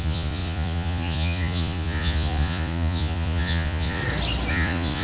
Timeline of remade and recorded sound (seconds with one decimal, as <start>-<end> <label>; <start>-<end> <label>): 0.0-4.0 remade; 4.0-4.5 recorded; 4.5-5.0 remade